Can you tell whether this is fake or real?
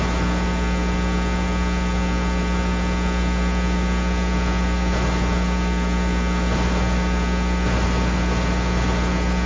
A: real